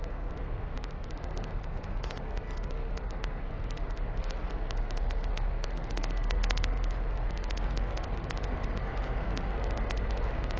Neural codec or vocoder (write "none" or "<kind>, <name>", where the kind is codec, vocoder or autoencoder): codec, SNAC